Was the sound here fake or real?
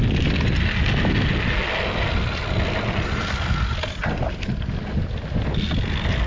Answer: real